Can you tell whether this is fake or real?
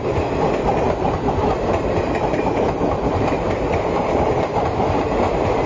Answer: real